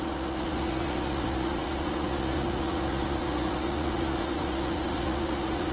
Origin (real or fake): fake